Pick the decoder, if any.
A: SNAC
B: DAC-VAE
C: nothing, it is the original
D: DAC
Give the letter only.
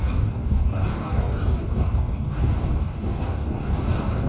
D